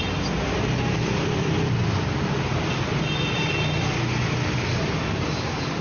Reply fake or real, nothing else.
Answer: real